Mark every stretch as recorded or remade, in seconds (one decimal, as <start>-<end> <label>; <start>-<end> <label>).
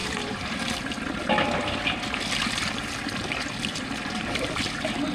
0.0-0.6 remade; 0.6-3.7 recorded; 3.7-4.6 remade; 4.6-5.1 recorded